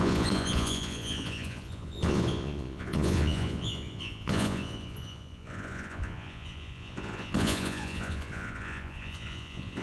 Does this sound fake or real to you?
fake